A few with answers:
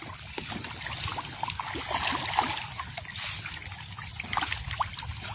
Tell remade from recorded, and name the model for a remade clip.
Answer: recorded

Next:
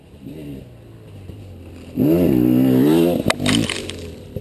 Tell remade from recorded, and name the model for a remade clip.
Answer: recorded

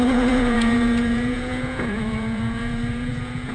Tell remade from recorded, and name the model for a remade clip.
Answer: remade, vocoder, Vocos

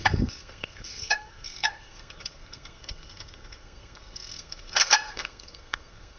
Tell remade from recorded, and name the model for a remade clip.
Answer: remade, codec, SNAC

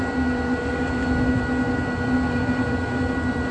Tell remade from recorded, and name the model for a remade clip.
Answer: recorded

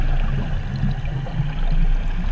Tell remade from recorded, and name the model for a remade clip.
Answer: recorded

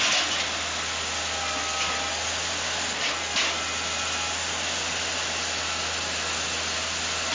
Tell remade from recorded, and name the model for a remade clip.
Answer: recorded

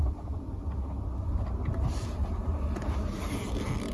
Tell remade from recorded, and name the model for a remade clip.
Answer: recorded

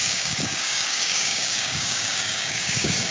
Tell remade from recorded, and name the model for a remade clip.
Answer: remade, codec, DAC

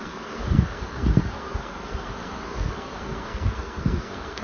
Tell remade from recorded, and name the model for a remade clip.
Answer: remade, codec, SNAC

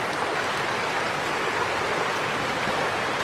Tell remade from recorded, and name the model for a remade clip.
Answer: recorded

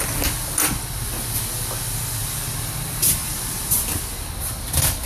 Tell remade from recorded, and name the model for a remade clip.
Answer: recorded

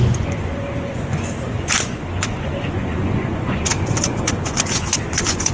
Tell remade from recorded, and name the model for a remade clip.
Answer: remade, vocoder, Vocos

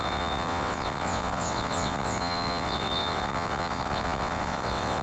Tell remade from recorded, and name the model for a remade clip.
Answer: remade, vocoder, WaveNeXt